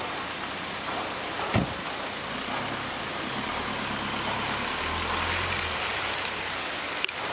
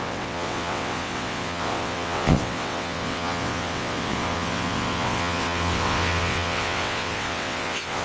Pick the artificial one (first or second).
second